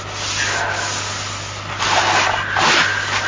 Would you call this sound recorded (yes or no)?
yes